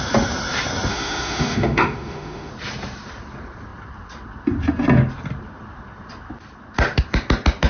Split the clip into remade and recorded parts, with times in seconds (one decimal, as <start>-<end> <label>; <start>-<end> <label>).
0.0-0.9 recorded; 0.9-2.5 remade; 2.5-7.7 recorded